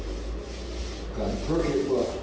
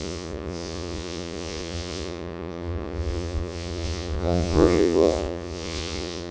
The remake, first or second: second